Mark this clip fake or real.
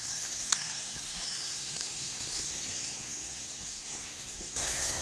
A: fake